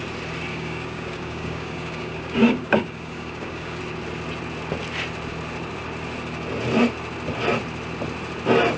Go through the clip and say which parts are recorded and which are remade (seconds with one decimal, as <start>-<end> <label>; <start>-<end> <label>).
0.0-0.5 recorded; 0.5-3.8 remade; 3.8-8.8 recorded